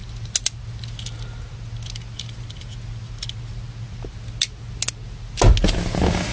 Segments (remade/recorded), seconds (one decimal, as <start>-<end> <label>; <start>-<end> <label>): 0.0-6.3 recorded